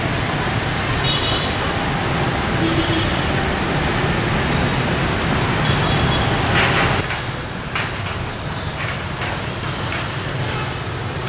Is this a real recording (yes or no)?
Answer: yes